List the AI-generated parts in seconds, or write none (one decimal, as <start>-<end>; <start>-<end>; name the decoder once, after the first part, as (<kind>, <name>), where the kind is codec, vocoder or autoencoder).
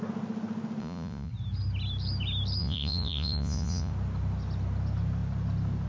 0.8-1.3 (vocoder, Vocos); 2.6-3.9